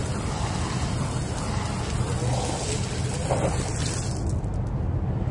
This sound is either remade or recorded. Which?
recorded